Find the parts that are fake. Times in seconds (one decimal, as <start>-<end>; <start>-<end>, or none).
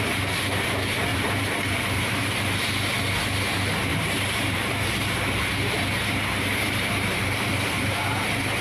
1.1-2.3; 3.9-8.6